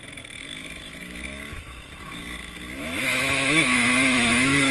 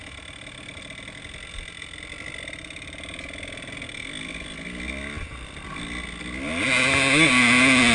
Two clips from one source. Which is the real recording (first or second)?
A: second